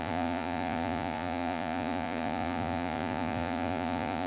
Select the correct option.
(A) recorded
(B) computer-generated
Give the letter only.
B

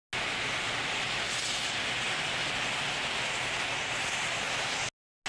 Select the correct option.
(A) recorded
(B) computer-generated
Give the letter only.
A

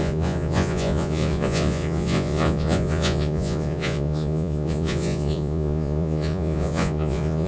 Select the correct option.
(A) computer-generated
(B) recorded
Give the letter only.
A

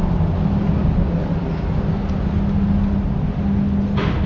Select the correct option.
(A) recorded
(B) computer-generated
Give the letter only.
A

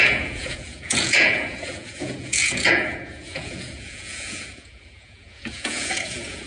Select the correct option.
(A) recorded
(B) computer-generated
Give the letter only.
B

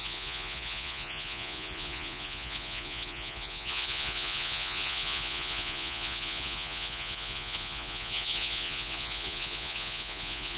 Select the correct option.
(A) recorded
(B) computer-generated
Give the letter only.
B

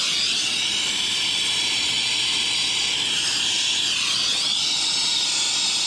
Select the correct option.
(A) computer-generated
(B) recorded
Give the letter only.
B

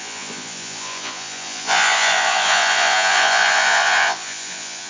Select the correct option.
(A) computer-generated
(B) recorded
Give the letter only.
A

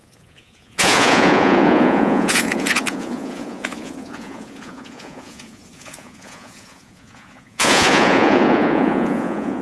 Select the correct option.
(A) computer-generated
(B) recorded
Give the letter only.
A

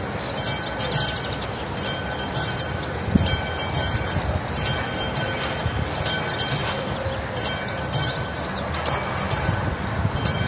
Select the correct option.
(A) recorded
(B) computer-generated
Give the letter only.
A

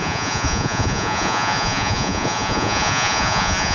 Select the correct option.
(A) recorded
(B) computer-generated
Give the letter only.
B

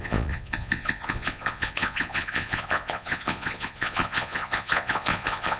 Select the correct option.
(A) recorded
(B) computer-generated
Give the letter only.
B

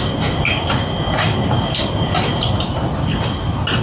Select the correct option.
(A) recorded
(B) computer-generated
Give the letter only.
A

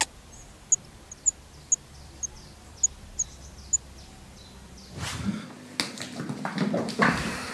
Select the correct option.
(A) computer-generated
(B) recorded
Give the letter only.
B